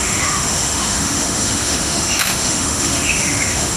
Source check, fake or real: fake